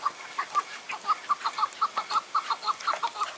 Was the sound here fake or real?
real